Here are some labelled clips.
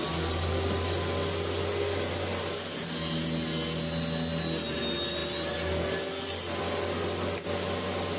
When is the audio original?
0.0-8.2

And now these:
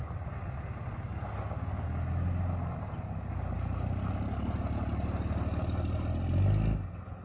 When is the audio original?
0.0-7.2

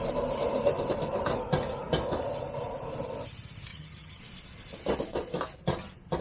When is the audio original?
0.0-3.7; 4.2-6.2

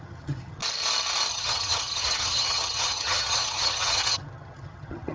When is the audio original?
0.6-1.3